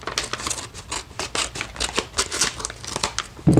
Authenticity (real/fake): real